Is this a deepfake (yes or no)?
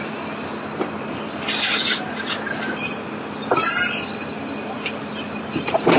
no